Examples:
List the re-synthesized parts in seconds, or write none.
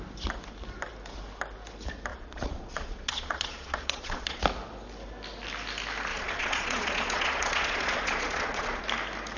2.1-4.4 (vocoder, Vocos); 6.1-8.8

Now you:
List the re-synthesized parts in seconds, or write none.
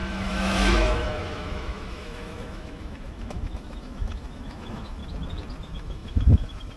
0.0-5.0 (autoencoder, DAC-VAE); 5.6-6.8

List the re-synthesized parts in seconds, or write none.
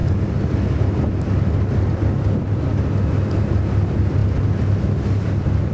none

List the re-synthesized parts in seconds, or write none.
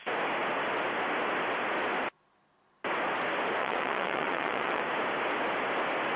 3.6-4.8 (vocoder, WaveNeXt)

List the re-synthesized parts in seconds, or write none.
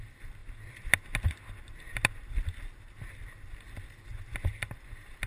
0.0-0.4 (vocoder, BigVGAN v2); 3.6-4.1; 4.7-5.3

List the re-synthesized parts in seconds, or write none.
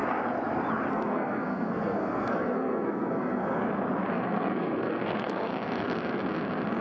0.9-3.6 (codec, SNAC); 4.1-5.5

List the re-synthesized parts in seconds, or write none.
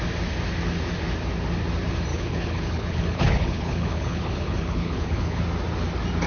2.1-5.4 (codec, HILCodec)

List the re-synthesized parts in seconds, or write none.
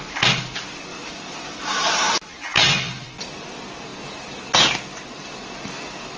0.9-2.1 (vocoder, BigVGAN v2)